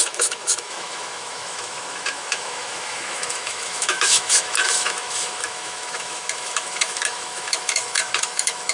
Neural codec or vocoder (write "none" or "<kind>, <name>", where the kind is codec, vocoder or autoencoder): autoencoder, DAC-VAE